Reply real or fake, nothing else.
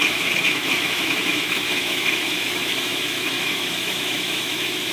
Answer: fake